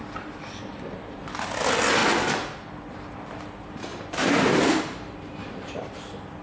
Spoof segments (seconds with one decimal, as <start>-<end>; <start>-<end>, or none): 3.9-5.8